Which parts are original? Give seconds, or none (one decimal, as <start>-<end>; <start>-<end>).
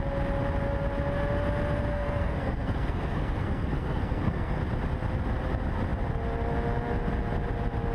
0.0-1.9; 4.6-7.9